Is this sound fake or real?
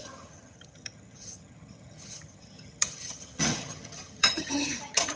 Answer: fake